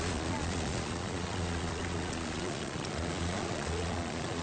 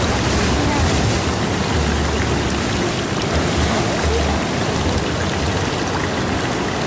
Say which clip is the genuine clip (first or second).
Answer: second